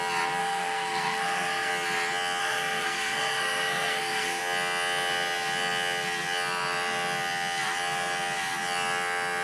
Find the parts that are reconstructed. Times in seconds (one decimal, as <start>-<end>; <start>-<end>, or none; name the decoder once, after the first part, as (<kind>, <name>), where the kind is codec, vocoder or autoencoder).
0.4-1.7 (codec, SNAC); 2.4-4.4